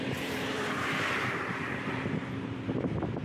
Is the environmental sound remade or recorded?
remade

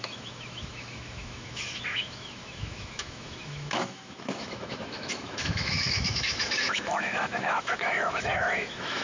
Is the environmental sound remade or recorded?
remade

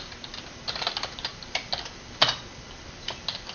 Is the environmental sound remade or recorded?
recorded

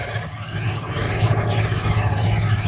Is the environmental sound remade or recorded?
remade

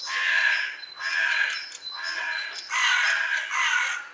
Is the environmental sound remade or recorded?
recorded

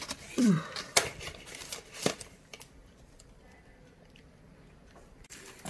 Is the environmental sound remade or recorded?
remade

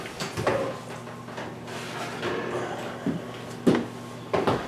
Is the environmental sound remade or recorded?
recorded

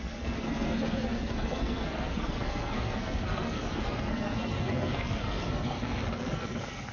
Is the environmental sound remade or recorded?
remade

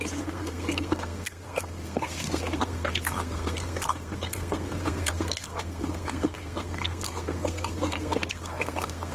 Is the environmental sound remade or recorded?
remade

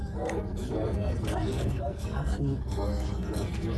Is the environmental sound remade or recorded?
remade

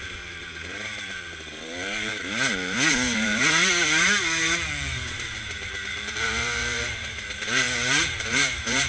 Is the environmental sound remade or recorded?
remade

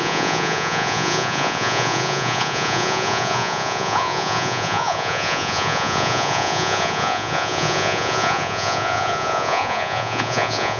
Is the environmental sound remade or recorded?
remade